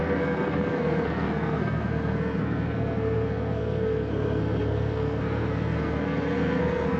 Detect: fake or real fake